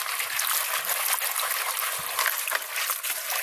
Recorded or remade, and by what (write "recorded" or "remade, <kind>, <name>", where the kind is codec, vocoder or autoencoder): recorded